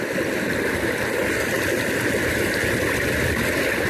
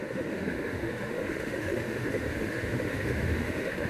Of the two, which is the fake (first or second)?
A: second